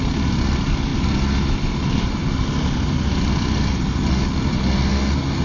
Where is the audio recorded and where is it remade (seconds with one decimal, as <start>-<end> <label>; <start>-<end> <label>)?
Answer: 0.0-5.4 recorded

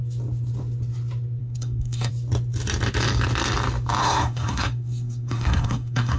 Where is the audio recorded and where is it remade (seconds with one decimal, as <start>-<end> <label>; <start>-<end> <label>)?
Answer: 0.0-1.4 recorded; 1.4-2.1 remade; 2.1-4.0 recorded; 4.0-6.2 remade

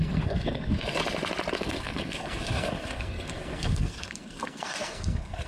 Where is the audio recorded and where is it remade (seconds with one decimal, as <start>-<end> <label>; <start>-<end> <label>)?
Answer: 0.0-1.0 remade; 1.0-1.5 recorded; 1.5-5.5 remade

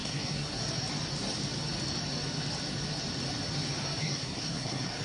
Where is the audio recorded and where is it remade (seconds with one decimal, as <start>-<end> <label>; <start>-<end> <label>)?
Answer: 0.0-0.6 remade; 0.6-4.0 recorded; 4.0-5.0 remade

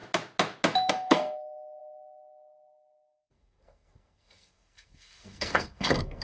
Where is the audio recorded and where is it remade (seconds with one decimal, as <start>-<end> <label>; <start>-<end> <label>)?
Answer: 0.0-0.9 recorded; 0.9-6.2 remade

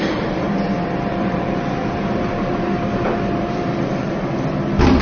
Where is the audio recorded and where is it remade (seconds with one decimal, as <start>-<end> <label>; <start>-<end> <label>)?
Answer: 0.0-0.5 remade; 0.5-1.1 recorded; 1.1-4.1 remade; 4.1-5.0 recorded